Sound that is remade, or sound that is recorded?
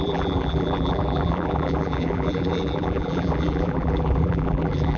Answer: remade